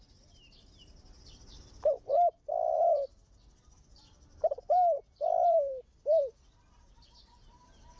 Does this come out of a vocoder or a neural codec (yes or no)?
yes